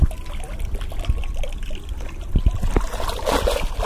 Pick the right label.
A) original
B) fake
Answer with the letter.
A